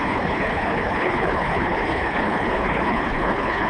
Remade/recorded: remade